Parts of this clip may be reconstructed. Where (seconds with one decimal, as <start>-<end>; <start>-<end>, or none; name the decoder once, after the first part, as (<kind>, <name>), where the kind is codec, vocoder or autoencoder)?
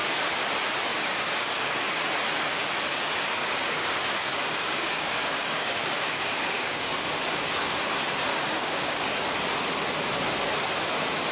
0.9-2.0 (codec, DAC); 3.4-7.1; 8.3-9.3